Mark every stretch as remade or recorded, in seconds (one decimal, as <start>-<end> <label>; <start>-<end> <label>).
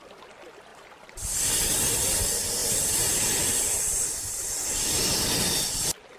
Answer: 0.0-0.7 recorded; 0.7-2.0 remade; 2.0-6.2 recorded